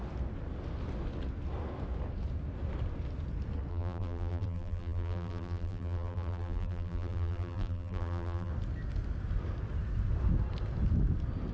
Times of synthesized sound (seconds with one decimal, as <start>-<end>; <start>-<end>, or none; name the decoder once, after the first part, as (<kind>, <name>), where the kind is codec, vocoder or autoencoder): 3.7-8.5 (vocoder, BigVGAN v2)